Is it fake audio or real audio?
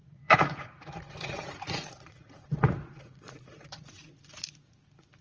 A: fake